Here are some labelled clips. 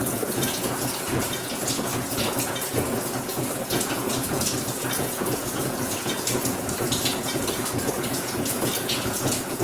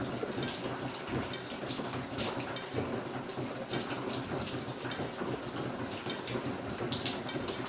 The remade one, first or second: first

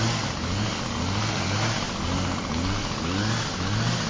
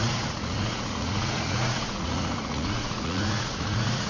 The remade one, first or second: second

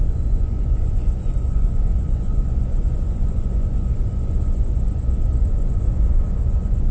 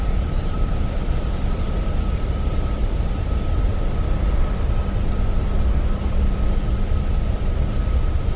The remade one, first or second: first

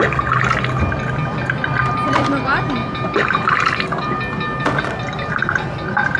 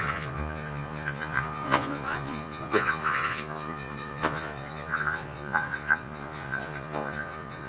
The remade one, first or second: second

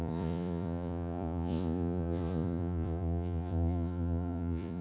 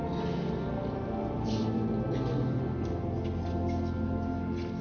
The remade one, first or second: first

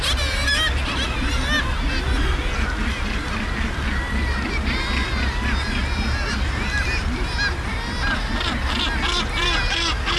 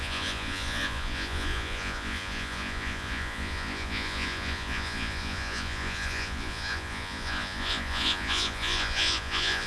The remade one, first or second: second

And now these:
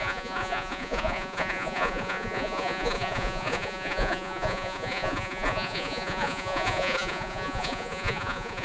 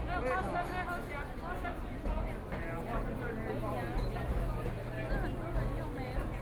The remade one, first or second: first